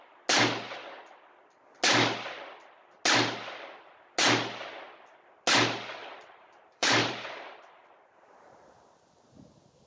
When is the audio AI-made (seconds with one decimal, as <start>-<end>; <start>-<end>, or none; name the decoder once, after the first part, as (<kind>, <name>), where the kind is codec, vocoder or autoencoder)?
6.0-8.8 (vocoder, BigVGAN v2)